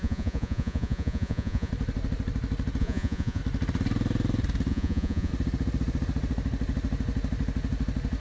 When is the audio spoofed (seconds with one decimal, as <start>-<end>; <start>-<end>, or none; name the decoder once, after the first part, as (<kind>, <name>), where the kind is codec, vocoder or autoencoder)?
0.0-1.7 (vocoder, Vocos); 2.8-3.4; 4.7-5.3